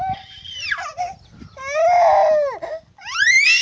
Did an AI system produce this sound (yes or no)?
no